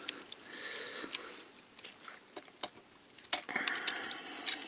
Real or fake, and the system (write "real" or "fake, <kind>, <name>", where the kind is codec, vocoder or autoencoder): real